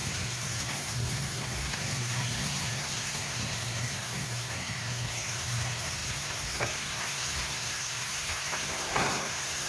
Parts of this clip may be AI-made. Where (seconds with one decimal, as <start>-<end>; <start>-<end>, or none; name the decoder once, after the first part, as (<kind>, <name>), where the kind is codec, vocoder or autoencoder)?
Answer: 0.0-9.7 (codec, SNAC)